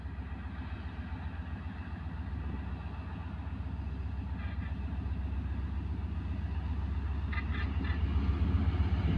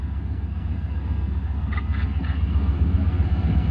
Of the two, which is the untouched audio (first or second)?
first